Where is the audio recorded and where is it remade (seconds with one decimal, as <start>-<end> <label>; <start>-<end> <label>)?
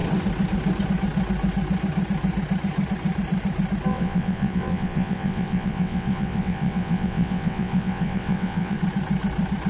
0.0-3.9 recorded; 3.9-8.8 remade; 8.8-9.7 recorded